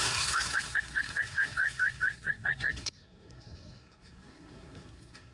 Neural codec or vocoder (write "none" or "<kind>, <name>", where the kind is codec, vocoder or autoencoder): codec, SNAC